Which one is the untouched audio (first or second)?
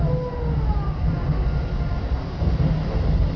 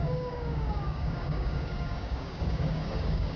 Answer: first